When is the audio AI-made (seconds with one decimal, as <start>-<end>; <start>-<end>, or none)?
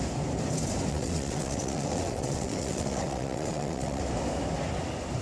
0.9-4.0